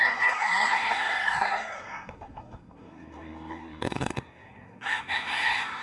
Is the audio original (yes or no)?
no